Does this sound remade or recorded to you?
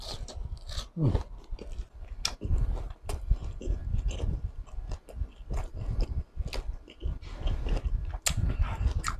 recorded